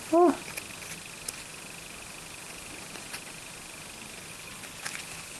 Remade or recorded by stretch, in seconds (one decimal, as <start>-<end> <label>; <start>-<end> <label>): 0.0-4.3 recorded; 4.3-5.4 remade